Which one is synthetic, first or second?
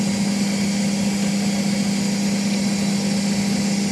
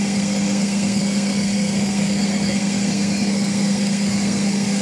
second